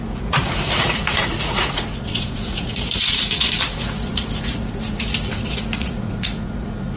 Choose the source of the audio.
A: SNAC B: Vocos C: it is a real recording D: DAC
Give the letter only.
B